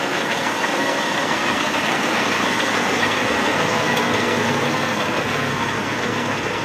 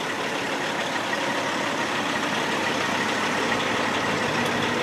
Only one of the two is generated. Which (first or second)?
first